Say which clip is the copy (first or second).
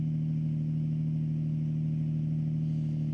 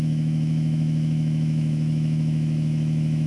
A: second